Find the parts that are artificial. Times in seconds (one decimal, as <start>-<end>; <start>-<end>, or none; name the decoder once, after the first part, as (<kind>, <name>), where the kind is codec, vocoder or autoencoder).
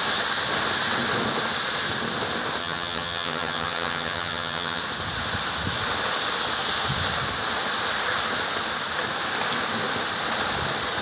2.6-4.8 (vocoder, HiFi-GAN)